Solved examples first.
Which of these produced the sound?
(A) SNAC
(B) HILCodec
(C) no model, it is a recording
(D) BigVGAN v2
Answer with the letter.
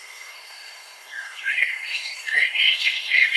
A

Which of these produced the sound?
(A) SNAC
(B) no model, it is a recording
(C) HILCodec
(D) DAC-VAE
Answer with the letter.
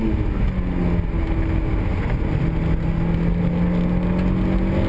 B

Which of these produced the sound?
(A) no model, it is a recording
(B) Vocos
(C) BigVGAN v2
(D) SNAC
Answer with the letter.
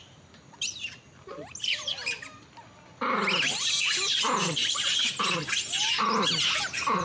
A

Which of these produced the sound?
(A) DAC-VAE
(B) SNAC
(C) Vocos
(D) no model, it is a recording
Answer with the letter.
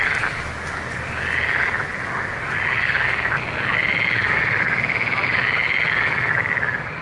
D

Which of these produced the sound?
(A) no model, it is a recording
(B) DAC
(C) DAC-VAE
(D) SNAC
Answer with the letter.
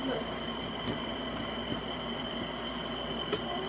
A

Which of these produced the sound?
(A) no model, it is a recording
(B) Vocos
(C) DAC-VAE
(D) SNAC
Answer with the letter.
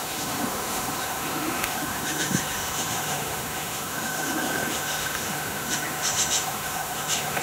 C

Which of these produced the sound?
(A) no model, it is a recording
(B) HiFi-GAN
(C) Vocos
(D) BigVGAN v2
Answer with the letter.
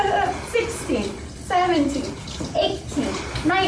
A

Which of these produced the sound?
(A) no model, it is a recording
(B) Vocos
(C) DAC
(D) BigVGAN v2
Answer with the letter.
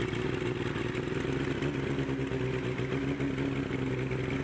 A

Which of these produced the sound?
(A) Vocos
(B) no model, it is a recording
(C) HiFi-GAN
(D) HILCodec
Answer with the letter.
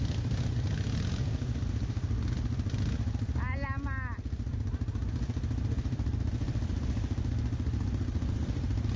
B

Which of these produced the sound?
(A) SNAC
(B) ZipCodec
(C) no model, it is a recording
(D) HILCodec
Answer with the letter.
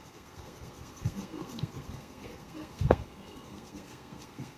A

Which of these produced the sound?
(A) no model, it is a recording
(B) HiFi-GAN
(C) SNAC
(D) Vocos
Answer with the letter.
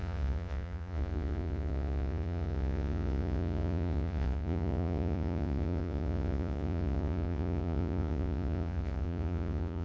D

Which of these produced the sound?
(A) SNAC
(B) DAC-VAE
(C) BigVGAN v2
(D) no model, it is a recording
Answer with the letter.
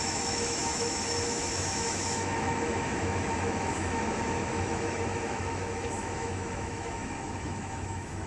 B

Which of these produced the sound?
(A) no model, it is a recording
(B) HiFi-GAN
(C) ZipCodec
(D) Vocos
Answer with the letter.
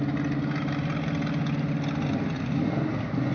A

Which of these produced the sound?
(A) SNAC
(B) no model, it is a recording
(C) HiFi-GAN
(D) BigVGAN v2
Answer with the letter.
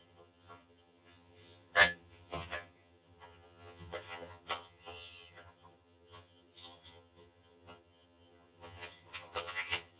C